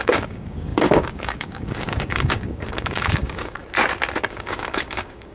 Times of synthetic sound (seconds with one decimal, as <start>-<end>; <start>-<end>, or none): 0.0-3.6; 4.3-5.3